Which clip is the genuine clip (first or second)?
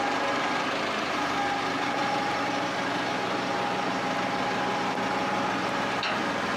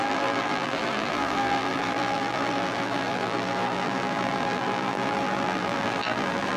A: first